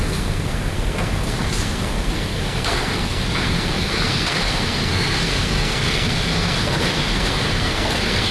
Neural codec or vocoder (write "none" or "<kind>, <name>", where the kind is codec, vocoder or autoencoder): codec, SNAC